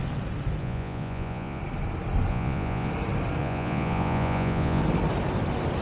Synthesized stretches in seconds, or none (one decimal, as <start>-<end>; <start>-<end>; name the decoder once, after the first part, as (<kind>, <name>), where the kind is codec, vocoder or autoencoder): 0.6-1.6 (vocoder, Vocos); 2.3-2.9; 3.4-4.8